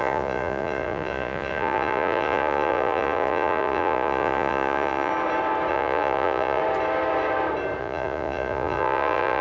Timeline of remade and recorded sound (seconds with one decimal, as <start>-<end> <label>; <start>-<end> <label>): 0.0-5.1 remade; 5.1-5.7 recorded; 5.7-6.6 remade; 6.6-7.8 recorded; 7.8-9.4 remade

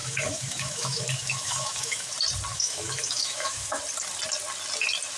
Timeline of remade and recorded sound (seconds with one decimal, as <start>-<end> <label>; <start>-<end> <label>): 0.0-2.1 remade; 2.1-2.5 recorded; 2.5-3.8 remade; 3.8-5.2 recorded

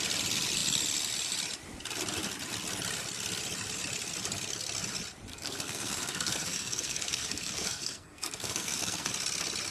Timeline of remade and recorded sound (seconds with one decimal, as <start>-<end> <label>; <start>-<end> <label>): 0.0-5.3 recorded; 5.3-9.1 remade; 9.1-9.7 recorded

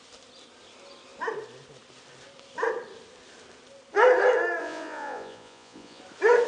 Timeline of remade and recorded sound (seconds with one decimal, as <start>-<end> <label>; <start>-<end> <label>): 0.0-4.6 recorded; 4.6-6.0 remade; 6.0-6.5 recorded

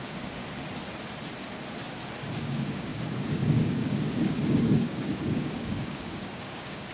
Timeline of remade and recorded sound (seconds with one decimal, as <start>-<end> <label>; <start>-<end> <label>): 0.0-0.4 remade; 0.4-2.3 recorded; 2.3-6.9 remade

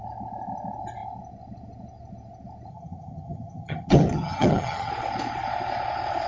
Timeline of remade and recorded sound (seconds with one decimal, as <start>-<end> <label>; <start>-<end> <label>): 0.0-2.7 recorded; 2.7-4.9 remade; 4.9-6.3 recorded

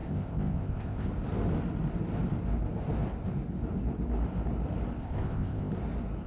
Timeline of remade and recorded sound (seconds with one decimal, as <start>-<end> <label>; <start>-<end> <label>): 0.0-1.1 remade; 1.1-5.0 recorded; 5.0-5.7 remade; 5.7-6.3 recorded